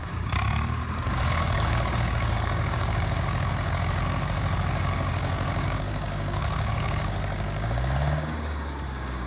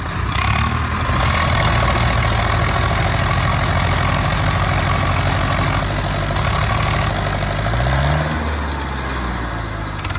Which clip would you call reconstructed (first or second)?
first